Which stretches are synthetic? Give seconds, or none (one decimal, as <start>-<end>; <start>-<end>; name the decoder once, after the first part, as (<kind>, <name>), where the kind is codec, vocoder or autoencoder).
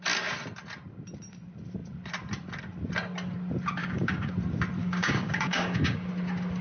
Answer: 3.8-4.3 (codec, DAC); 4.8-6.1